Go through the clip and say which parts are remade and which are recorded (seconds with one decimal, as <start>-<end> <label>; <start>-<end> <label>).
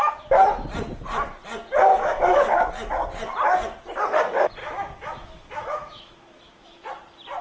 0.0-1.9 recorded; 1.9-2.7 remade; 2.7-4.6 recorded; 4.6-6.9 remade; 6.9-7.4 recorded